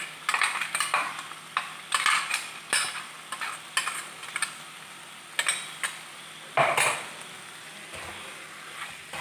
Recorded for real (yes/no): yes